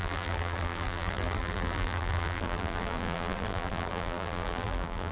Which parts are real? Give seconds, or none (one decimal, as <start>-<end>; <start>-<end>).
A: none

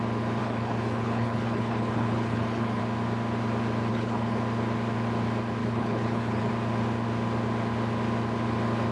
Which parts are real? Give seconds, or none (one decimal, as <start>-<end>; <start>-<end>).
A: 0.0-0.4; 2.8-3.9; 4.4-5.6; 6.5-8.9

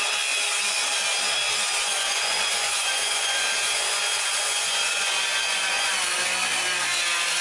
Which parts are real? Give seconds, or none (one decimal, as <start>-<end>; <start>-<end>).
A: 0.0-1.8; 5.9-7.4

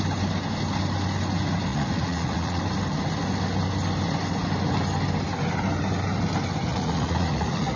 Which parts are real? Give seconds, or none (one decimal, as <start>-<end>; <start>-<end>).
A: 0.0-1.7; 2.6-6.7

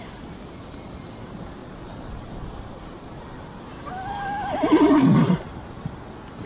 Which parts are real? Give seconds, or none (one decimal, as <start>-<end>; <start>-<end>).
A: 0.0-1.6; 2.1-3.7; 5.8-6.5